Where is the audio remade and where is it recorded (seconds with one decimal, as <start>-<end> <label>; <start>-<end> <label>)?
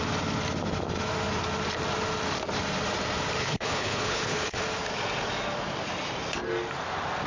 0.0-3.4 recorded; 3.4-4.6 remade; 4.6-7.3 recorded